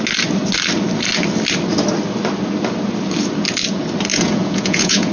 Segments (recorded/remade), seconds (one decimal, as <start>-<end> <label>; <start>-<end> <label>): 0.0-4.1 recorded; 4.1-5.1 remade